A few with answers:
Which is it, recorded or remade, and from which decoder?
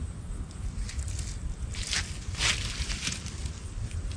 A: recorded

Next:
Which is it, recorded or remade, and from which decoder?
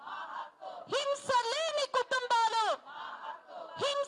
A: recorded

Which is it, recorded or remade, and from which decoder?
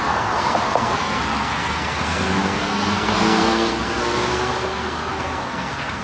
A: remade, codec, SNAC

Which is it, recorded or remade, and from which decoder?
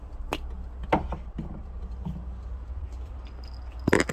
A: recorded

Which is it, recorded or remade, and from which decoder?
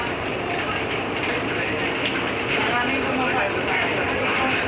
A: recorded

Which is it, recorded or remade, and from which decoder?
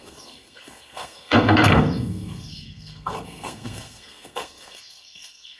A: remade, codec, SNAC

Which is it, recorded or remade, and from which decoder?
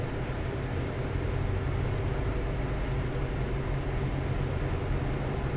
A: recorded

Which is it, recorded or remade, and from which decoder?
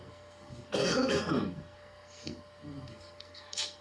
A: remade, codec, SNAC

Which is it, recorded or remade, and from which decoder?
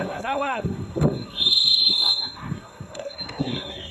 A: remade, codec, SNAC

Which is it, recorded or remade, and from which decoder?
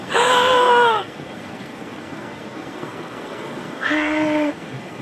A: remade, codec, SNAC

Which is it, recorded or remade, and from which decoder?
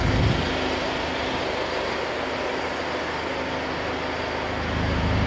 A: recorded